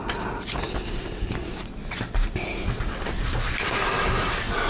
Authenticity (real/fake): real